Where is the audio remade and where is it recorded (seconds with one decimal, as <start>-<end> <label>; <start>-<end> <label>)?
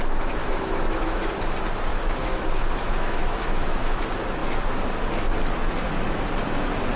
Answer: 0.0-0.4 recorded; 0.4-1.3 remade; 1.3-1.9 recorded; 1.9-4.0 remade; 4.0-7.0 recorded